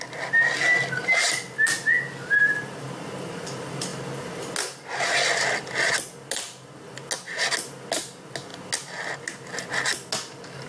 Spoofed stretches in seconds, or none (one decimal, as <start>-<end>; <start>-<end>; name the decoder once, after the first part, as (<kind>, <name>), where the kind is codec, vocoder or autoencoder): none